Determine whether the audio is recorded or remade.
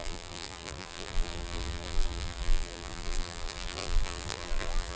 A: remade